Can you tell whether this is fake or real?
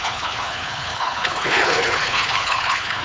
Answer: fake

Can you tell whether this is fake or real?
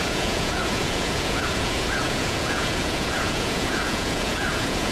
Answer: fake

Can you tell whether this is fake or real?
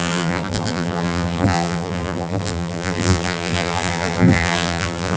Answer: fake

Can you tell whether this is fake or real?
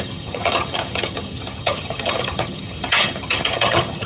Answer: fake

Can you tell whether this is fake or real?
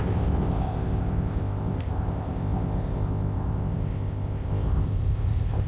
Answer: fake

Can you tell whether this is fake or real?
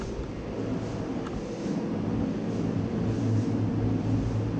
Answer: real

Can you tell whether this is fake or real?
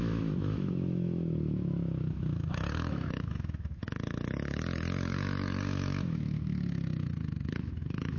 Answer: fake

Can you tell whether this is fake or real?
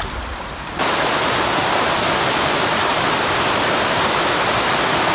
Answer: real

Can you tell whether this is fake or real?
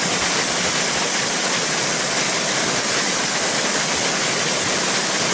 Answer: real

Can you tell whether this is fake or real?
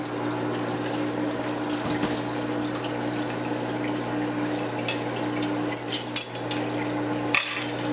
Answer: real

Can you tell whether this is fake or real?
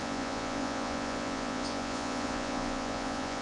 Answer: fake